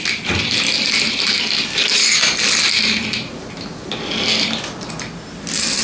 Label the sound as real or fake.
real